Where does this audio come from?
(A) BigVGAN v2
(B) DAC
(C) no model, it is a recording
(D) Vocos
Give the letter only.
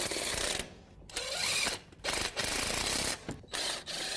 C